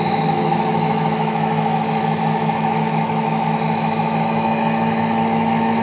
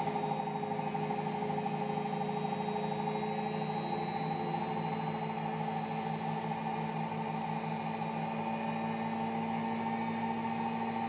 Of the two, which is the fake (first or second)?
first